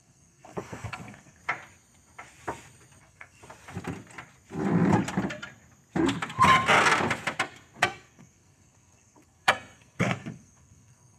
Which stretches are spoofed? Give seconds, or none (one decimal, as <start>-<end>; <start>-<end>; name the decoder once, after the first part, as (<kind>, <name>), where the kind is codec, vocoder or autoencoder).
0.0-1.4 (codec, SNAC); 3.0-3.4; 7.8-11.2